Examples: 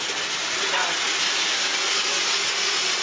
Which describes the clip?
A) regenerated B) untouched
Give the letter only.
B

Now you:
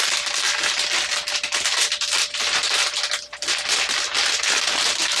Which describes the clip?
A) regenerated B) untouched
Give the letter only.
B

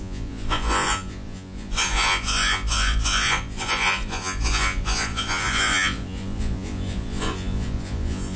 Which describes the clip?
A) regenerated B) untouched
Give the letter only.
A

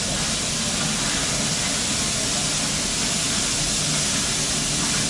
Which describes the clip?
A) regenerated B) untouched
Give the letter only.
B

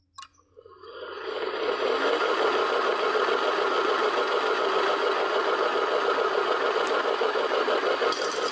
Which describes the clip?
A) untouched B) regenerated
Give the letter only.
A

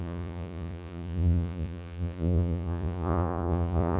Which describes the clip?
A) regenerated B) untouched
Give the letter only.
A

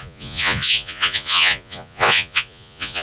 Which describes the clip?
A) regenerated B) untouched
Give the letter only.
A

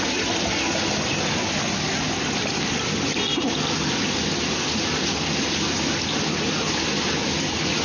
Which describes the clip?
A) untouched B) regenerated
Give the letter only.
A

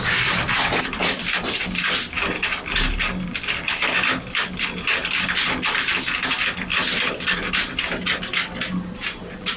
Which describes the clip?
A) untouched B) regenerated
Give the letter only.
A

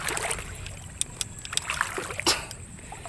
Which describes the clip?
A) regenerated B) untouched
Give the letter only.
B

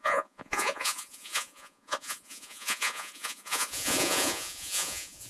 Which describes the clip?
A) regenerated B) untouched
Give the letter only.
A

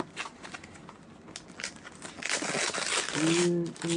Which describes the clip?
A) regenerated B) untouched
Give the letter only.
B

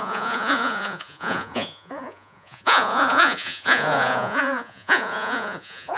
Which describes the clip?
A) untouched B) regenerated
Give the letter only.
B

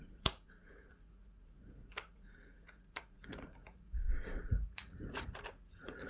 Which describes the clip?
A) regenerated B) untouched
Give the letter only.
A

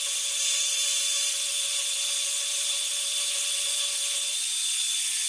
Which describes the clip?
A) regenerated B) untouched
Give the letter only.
B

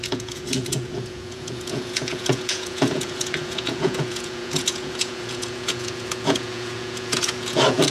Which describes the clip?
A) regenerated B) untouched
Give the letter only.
A